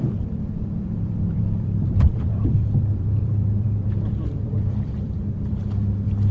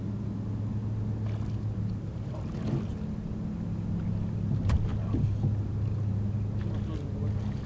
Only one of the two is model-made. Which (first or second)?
first